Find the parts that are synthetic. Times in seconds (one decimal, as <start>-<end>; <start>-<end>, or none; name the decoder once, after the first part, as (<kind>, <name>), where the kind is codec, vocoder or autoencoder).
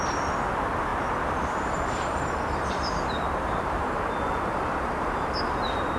0.9-4.1 (vocoder, BigVGAN v2)